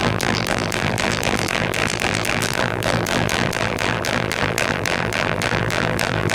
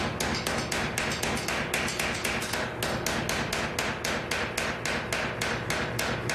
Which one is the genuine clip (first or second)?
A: second